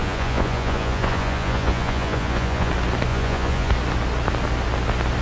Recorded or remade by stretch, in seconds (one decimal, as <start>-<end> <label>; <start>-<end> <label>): 0.0-2.7 remade; 2.7-3.1 recorded; 3.1-3.7 remade; 3.7-5.2 recorded